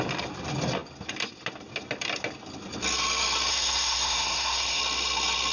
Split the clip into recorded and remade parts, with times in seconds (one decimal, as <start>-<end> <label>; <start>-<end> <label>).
0.0-3.5 recorded; 3.5-4.8 remade; 4.8-5.5 recorded